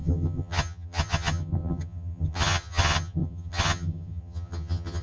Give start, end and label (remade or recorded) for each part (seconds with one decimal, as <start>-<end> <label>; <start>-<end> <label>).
0.0-5.0 remade